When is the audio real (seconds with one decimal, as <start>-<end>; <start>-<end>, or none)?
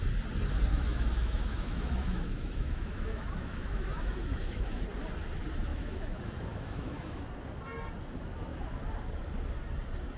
0.0-0.7; 4.8-5.7; 7.3-10.2